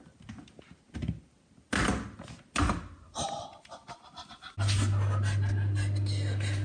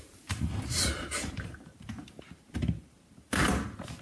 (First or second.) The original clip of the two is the first